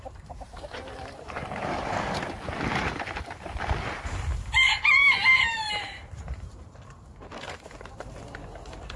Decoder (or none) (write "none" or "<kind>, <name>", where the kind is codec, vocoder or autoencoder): vocoder, BigVGAN v2